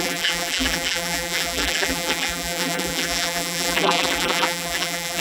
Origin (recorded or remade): remade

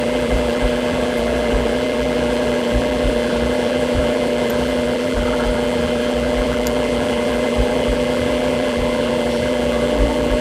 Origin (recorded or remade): remade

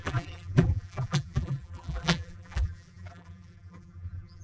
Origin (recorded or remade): remade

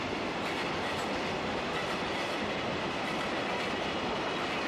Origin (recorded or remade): recorded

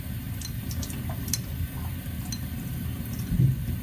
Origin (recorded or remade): recorded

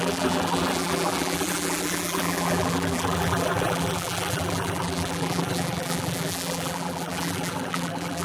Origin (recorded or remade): remade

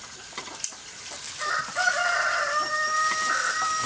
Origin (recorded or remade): remade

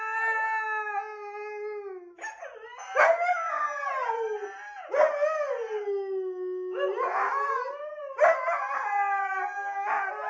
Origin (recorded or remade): recorded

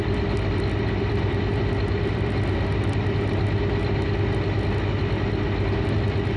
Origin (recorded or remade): recorded